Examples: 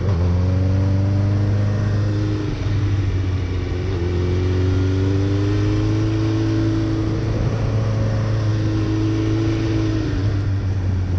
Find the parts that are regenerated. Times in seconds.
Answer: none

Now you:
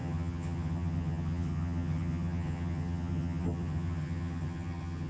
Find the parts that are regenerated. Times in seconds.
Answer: 0.0-5.1 (vocoder, HiFi-GAN)

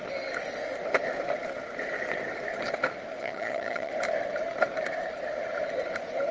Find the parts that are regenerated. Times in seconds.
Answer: 3.2-3.9 (vocoder, HiFi-GAN)

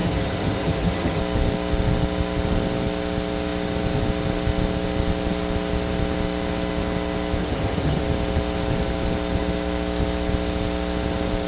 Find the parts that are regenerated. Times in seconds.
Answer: 0.0-1.2 (vocoder, HiFi-GAN); 7.4-8.0

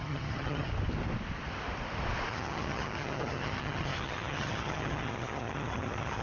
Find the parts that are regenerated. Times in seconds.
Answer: 0.0-0.7 (vocoder, HiFi-GAN); 2.3-6.2